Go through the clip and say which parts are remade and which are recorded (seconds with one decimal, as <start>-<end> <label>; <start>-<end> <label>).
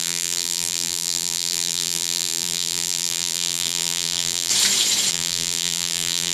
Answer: 0.0-4.5 remade; 4.5-5.1 recorded; 5.1-6.3 remade